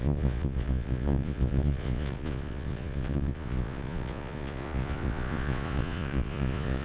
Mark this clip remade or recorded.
remade